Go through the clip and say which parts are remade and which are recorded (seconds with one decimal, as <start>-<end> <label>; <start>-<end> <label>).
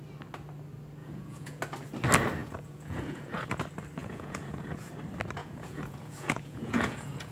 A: 0.0-1.0 recorded; 1.0-1.6 remade; 1.6-2.4 recorded; 2.4-3.6 remade; 3.6-4.0 recorded; 4.0-4.9 remade; 4.9-5.4 recorded; 5.4-7.3 remade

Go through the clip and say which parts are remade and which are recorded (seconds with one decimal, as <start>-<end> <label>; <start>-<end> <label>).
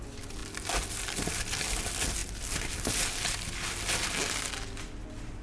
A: 0.0-5.4 recorded